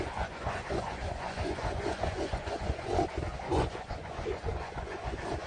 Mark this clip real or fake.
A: fake